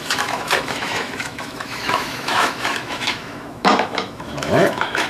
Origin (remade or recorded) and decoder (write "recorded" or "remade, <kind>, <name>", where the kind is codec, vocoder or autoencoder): remade, autoencoder, DAC-VAE